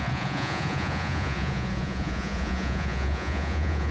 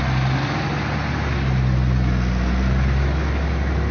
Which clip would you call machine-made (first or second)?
first